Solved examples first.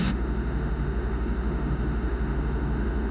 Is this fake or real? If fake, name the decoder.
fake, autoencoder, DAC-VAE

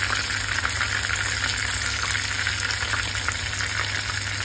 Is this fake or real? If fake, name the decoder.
real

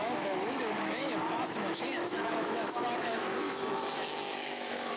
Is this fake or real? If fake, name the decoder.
fake, autoencoder, DAC-VAE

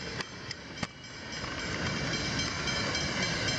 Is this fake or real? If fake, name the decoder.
real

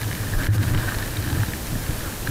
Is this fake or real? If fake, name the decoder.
real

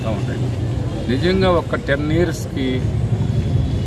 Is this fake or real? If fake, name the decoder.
real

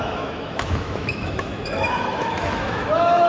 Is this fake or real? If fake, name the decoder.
fake, autoencoder, DAC-VAE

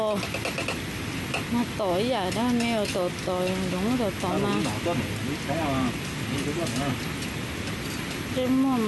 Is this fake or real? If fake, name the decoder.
real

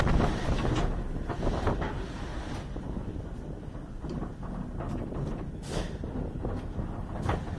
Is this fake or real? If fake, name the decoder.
real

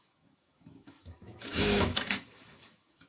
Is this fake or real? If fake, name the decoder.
fake, autoencoder, DAC-VAE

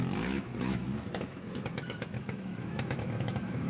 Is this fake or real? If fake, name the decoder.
fake, autoencoder, DAC-VAE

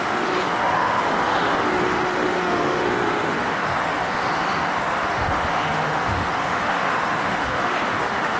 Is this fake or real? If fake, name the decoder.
fake, autoencoder, DAC-VAE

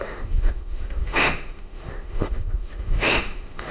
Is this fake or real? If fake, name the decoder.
fake, autoencoder, DAC-VAE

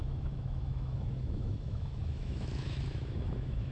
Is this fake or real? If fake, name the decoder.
fake, autoencoder, DAC-VAE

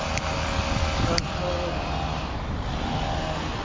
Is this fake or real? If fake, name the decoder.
real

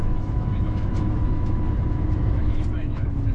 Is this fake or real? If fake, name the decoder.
fake, autoencoder, DAC-VAE